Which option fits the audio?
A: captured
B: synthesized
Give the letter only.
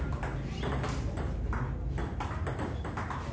A